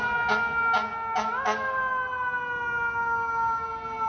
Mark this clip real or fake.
real